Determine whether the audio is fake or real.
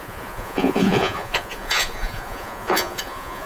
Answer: fake